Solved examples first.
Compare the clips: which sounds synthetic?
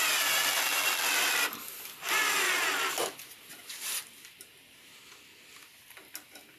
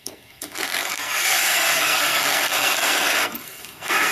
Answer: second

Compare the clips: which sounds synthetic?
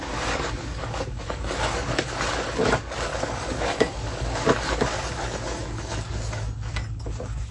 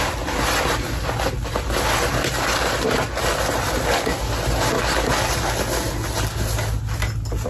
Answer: first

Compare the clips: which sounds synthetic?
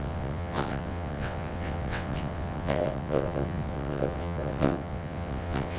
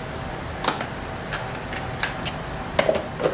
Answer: first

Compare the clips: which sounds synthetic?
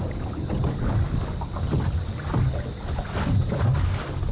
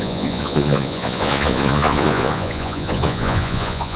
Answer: second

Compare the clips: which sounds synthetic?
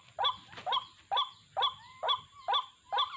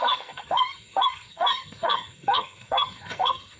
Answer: second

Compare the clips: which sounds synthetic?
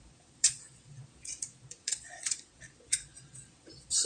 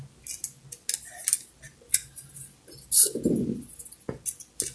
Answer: first